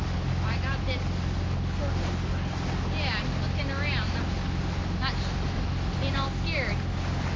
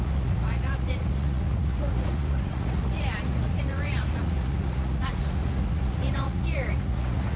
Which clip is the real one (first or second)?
first